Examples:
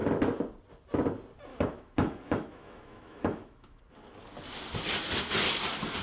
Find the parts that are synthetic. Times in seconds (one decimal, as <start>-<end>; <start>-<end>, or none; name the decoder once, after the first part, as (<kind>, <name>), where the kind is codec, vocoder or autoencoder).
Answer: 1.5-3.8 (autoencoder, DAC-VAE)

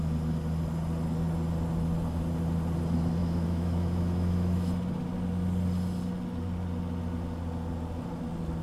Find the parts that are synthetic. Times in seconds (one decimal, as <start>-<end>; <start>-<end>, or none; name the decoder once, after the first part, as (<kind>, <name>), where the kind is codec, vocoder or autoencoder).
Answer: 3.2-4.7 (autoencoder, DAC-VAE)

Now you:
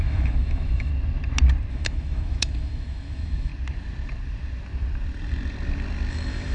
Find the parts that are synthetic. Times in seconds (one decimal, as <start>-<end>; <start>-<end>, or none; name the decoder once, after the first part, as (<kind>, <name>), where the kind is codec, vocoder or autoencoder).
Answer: 0.0-0.9 (autoencoder, DAC-VAE); 1.7-3.5; 6.1-6.5

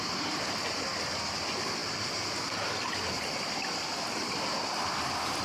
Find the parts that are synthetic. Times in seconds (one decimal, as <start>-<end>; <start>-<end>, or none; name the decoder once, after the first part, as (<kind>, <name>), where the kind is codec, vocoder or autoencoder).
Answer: none

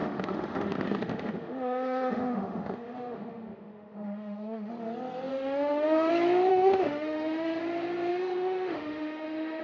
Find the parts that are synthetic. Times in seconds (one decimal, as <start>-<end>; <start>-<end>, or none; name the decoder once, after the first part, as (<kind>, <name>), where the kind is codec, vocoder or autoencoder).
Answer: 0.0-4.7 (autoencoder, DAC-VAE); 5.3-6.1; 6.5-7.6; 8.1-9.6

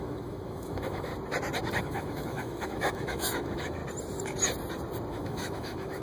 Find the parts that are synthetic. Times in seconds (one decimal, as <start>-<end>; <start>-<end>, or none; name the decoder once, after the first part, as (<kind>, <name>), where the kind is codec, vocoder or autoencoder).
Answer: 0.0-1.1 (autoencoder, DAC-VAE); 1.8-3.8; 5.1-6.0